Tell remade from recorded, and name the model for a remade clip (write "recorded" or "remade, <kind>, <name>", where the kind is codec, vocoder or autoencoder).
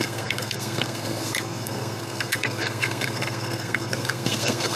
remade, codec, SNAC